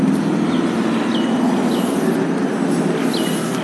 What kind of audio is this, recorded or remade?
recorded